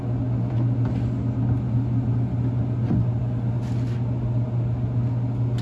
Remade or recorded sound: recorded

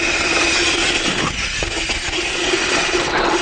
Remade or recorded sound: recorded